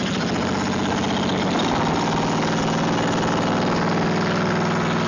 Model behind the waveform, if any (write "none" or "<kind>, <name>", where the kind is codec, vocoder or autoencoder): none